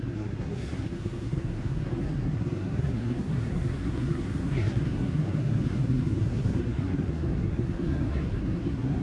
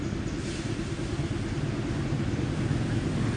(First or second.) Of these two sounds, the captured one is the second